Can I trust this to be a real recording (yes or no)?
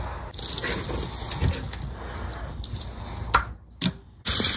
yes